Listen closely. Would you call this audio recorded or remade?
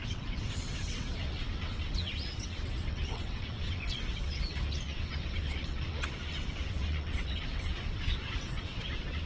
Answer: remade